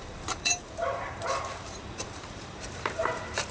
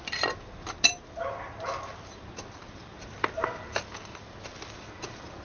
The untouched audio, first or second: second